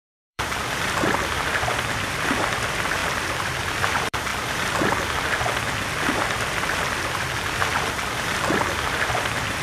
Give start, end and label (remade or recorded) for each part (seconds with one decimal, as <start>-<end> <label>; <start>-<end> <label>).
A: 0.0-4.3 remade; 4.3-7.9 recorded; 7.9-9.6 remade